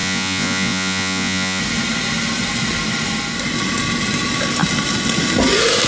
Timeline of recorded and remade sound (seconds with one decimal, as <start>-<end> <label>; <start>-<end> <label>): 0.0-1.6 remade; 1.6-5.9 recorded

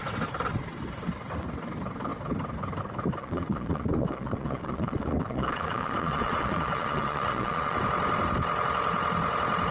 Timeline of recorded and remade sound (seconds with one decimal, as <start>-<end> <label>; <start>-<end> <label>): 0.0-3.2 recorded; 3.2-7.8 remade; 7.8-9.7 recorded

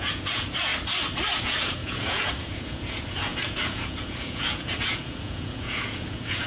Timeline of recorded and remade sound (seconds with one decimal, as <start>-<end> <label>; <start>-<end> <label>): 0.0-0.7 remade; 0.7-1.4 recorded; 1.4-6.5 remade

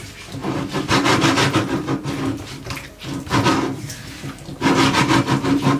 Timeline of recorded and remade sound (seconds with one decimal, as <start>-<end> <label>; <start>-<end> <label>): 0.0-5.8 recorded

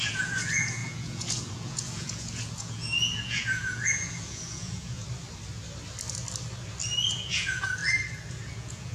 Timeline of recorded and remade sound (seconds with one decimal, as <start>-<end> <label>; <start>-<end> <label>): 0.0-5.0 remade; 5.0-7.1 recorded; 7.1-7.8 remade; 7.8-8.3 recorded; 8.3-8.9 remade

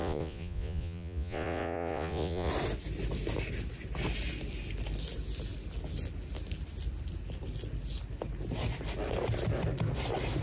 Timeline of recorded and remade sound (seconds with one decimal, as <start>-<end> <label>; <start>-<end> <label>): 0.0-2.5 remade; 2.5-10.4 recorded

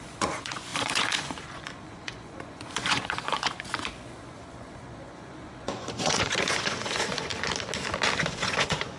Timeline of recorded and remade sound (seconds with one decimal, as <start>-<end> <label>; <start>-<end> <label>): 0.0-7.3 remade; 7.3-8.2 recorded; 8.2-9.0 remade